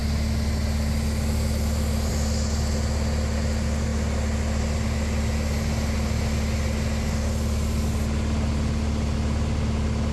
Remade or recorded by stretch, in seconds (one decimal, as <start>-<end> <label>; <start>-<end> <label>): 0.0-10.1 recorded